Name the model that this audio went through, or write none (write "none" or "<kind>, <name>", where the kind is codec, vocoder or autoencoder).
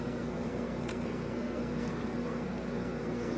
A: codec, SNAC